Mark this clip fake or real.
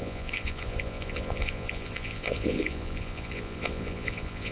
fake